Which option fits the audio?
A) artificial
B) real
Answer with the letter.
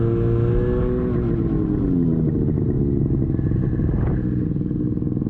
B